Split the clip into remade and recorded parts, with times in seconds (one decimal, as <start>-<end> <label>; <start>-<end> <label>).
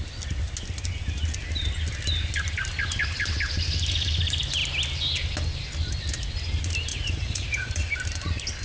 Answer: 0.0-6.9 recorded; 6.9-7.7 remade; 7.7-8.6 recorded